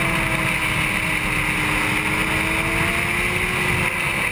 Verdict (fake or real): real